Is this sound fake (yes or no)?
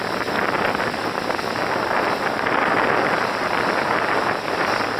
no